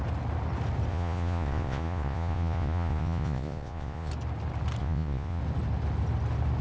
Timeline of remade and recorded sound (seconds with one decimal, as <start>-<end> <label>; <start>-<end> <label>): 0.0-0.9 recorded; 0.9-4.1 remade; 4.1-4.8 recorded; 4.8-5.4 remade; 5.4-6.6 recorded